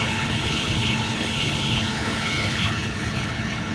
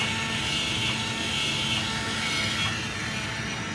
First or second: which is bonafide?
second